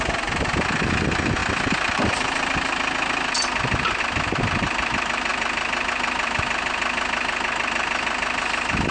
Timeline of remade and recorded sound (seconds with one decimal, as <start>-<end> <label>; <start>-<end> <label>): 0.0-8.9 recorded